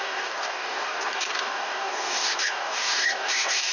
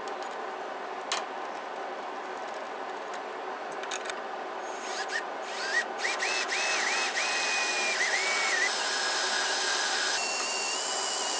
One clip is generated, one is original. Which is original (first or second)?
second